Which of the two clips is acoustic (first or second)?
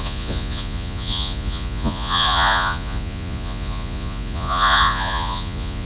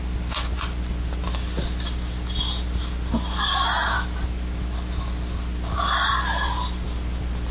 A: second